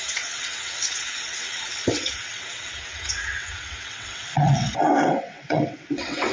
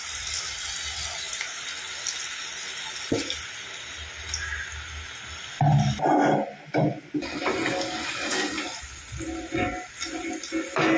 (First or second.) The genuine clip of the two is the second